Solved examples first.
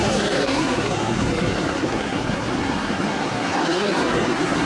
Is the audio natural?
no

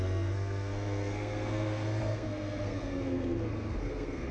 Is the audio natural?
no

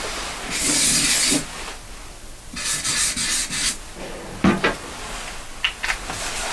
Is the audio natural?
yes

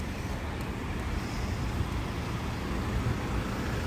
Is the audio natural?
yes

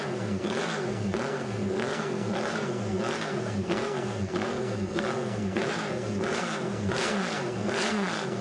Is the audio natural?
no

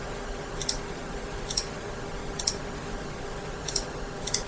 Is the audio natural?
yes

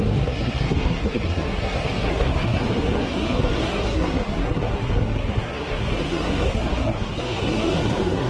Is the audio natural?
no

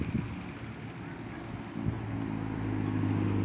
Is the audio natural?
yes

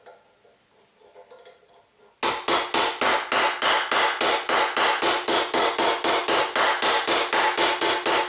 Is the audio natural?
yes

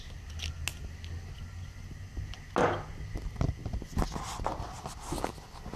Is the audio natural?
yes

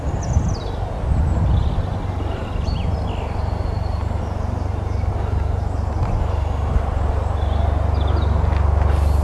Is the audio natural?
yes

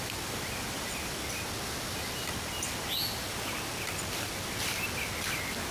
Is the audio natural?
yes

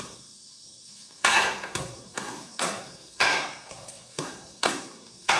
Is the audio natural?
no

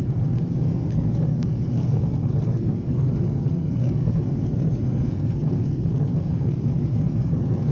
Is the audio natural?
no